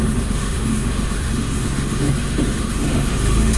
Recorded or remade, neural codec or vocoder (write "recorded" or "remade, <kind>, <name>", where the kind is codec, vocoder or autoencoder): remade, autoencoder, DAC-VAE